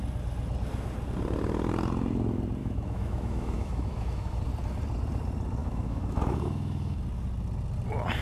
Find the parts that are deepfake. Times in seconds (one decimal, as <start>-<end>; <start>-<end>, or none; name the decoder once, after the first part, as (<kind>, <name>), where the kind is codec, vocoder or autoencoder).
2.6-4.4 (autoencoder, DAC-VAE); 5.6-7.0